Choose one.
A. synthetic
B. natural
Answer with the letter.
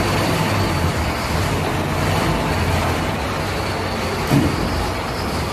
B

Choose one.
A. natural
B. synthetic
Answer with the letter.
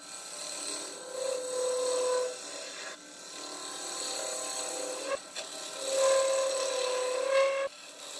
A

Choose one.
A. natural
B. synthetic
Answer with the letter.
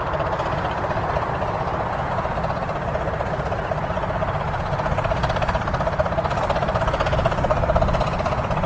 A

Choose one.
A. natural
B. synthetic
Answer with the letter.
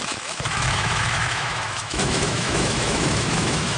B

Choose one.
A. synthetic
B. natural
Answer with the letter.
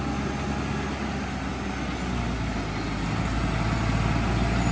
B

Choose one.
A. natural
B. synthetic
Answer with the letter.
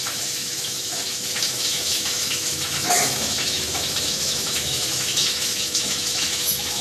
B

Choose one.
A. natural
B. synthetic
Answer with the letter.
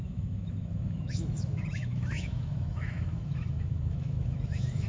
B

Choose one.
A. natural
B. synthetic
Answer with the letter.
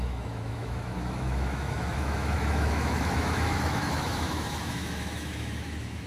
B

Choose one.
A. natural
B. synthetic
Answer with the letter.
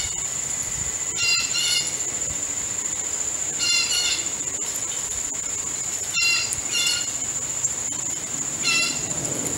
A